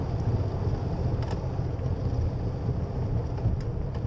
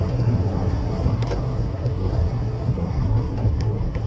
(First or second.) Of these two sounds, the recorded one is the first